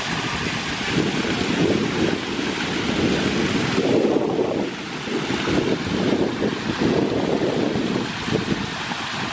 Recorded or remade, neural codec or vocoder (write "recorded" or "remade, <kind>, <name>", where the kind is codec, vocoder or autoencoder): recorded